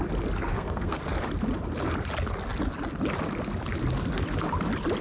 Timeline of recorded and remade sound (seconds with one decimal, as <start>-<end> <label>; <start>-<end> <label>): 0.0-0.5 recorded; 0.5-1.0 remade; 1.0-5.0 recorded